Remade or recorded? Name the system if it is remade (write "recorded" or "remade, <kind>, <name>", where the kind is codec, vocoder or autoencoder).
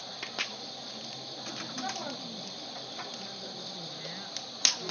recorded